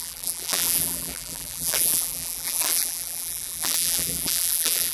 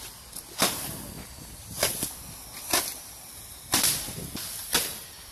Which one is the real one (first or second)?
second